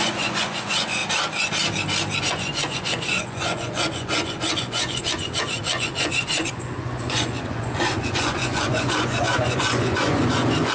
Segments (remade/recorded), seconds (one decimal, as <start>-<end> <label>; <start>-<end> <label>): 0.0-1.0 remade; 1.0-2.2 recorded; 2.2-10.7 remade